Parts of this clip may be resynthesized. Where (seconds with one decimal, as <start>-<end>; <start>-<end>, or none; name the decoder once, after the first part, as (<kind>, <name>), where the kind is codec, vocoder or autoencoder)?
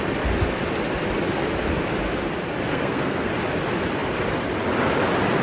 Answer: 2.7-3.3 (codec, SNAC)